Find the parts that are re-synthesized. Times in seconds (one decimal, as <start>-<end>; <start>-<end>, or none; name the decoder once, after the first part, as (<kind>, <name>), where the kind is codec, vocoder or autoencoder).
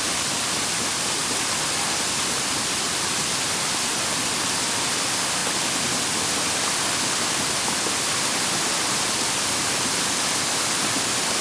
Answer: none